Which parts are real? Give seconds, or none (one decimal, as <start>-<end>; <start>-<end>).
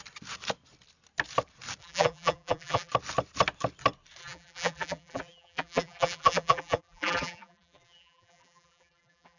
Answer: 0.0-1.8; 2.9-4.2